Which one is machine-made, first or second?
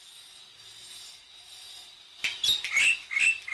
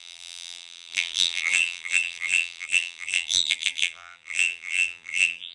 second